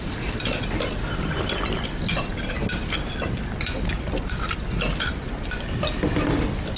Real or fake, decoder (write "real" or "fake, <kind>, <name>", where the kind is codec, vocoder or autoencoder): real